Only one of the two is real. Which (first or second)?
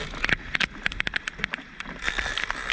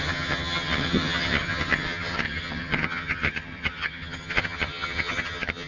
first